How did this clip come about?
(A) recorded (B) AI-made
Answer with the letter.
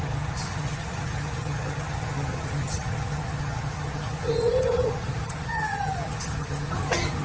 B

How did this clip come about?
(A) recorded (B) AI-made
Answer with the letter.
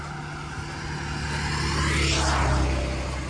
A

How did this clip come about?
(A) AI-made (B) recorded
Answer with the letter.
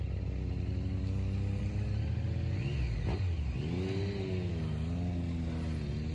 B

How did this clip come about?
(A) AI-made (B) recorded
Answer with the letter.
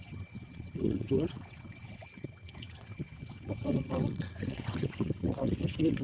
A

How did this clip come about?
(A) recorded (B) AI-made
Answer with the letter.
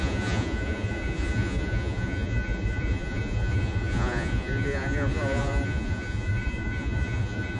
B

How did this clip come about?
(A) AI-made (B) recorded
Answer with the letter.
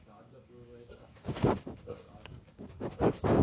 A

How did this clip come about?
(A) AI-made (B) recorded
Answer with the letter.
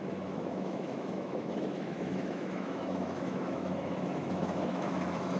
A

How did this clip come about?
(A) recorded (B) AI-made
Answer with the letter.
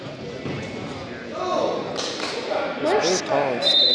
A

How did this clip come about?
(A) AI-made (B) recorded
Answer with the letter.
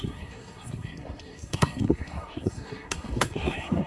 A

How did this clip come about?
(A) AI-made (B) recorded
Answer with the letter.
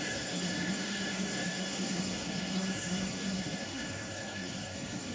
A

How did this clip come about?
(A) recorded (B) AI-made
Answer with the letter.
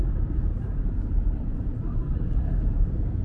B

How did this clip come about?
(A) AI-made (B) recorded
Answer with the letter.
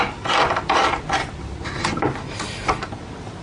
B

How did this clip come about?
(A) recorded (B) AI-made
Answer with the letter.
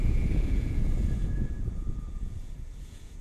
B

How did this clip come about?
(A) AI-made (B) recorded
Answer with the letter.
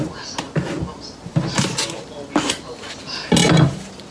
B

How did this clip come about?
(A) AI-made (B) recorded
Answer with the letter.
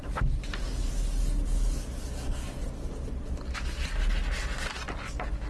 B